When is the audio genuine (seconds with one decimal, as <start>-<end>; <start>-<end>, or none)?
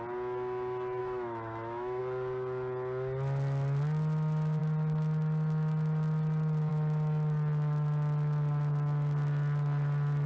0.0-1.0; 2.0-10.3